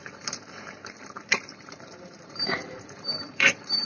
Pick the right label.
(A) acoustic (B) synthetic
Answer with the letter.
B